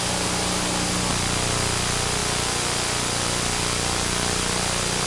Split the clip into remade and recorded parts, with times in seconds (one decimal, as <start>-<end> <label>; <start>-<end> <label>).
0.0-5.1 recorded